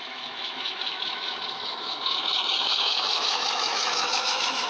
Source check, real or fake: fake